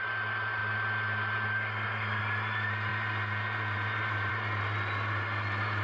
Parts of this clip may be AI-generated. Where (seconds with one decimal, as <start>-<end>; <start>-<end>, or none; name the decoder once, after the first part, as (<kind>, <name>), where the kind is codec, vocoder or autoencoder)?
none